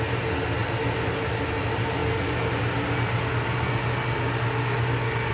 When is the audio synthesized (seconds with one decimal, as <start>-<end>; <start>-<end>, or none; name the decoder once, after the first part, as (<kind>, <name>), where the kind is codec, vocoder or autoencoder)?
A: none

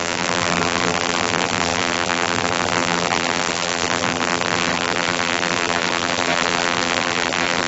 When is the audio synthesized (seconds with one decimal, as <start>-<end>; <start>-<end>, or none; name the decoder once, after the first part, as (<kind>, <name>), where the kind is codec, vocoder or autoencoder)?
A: 0.0-7.7 (vocoder, BigVGAN v2)

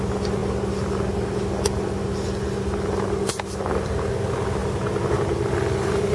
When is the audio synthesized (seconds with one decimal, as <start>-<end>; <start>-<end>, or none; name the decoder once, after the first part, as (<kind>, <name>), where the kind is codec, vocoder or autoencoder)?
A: none

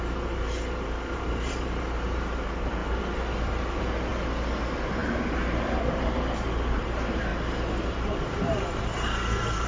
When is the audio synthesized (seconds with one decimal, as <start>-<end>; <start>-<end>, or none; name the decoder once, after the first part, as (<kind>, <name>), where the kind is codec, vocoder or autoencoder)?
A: 0.0-2.8 (vocoder, BigVGAN v2); 3.4-4.1; 4.6-7.3; 7.9-9.7

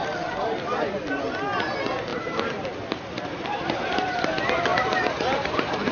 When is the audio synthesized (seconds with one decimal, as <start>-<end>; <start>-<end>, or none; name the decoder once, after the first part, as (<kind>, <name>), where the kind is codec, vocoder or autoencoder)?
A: 2.1-4.3 (vocoder, BigVGAN v2); 4.7-5.9